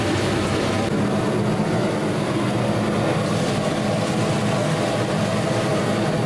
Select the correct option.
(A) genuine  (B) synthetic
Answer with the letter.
A